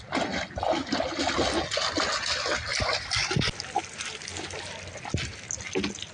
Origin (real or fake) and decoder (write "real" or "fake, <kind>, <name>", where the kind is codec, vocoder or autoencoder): real